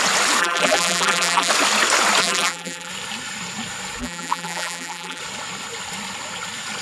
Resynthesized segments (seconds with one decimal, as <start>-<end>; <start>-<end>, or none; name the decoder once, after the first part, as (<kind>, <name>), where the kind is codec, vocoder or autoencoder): 0.4-1.5 (vocoder, BigVGAN v2); 2.2-2.9; 4.0-5.2